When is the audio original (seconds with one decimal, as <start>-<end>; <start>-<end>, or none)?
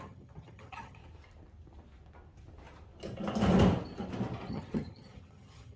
1.0-4.5